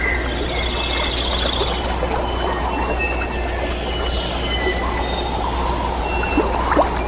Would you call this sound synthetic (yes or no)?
no